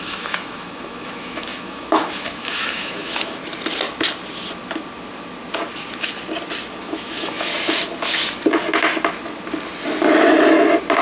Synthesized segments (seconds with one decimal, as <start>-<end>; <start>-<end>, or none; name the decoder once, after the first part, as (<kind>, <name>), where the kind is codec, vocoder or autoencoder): 0.0-3.4 (autoencoder, DAC-VAE); 6.8-7.5